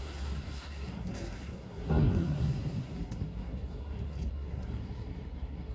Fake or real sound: fake